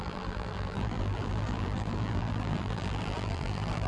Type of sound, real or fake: fake